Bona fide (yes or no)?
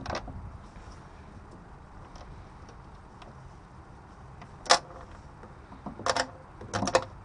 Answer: yes